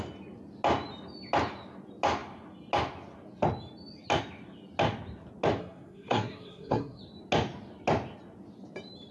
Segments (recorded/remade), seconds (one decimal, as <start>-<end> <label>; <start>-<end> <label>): 0.0-5.6 recorded; 5.6-7.0 remade; 7.0-9.1 recorded